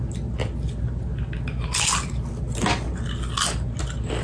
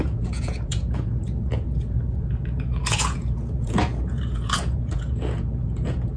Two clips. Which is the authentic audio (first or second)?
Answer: first